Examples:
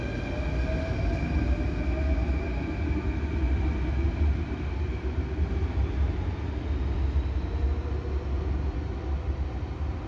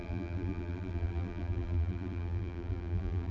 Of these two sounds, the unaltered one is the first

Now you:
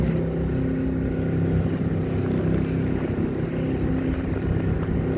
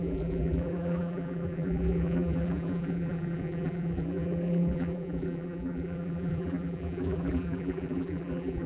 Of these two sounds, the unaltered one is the first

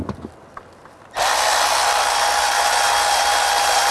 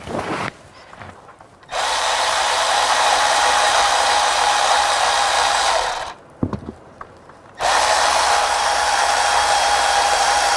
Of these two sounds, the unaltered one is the first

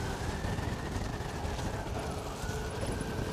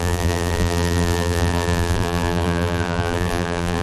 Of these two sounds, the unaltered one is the first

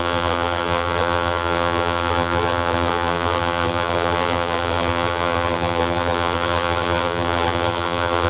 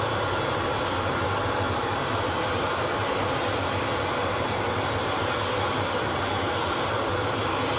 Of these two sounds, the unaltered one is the second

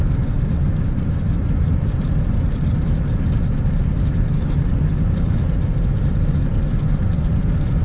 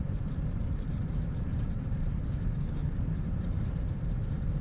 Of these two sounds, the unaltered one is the first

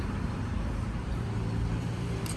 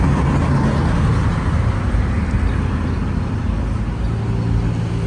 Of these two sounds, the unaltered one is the second